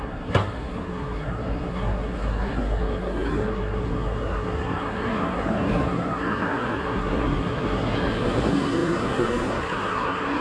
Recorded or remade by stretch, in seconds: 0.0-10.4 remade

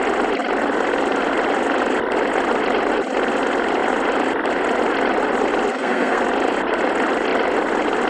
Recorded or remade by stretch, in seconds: 0.0-5.7 recorded; 5.7-6.2 remade; 6.2-8.1 recorded

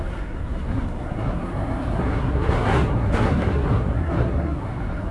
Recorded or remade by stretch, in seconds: 0.0-5.1 remade

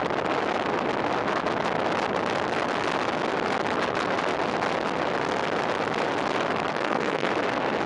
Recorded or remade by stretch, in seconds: 0.0-6.7 recorded; 6.7-7.3 remade; 7.3-7.9 recorded